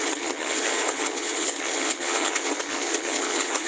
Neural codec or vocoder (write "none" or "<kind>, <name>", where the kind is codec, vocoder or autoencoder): vocoder, HiFi-GAN